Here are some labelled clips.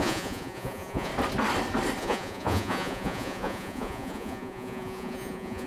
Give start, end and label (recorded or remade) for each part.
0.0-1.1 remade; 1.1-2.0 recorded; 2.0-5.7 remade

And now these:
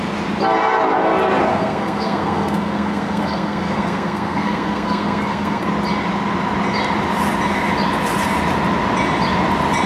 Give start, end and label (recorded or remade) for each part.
0.0-1.5 recorded; 1.5-5.7 remade; 5.7-9.9 recorded

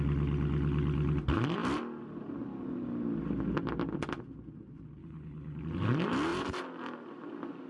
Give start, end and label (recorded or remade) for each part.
0.0-5.0 recorded; 5.0-5.6 remade; 5.6-7.7 recorded

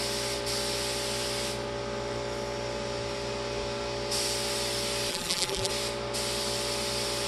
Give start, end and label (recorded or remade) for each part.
0.0-5.1 recorded; 5.1-5.7 remade; 5.7-7.3 recorded

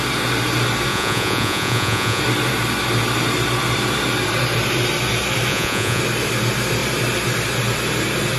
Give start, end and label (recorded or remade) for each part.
0.0-0.9 recorded; 0.9-2.2 remade; 2.2-5.5 recorded; 5.5-6.0 remade; 6.0-8.4 recorded

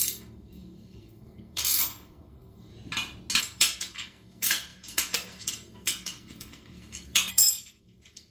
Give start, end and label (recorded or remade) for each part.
0.0-2.7 remade; 2.7-3.4 recorded; 3.4-8.3 remade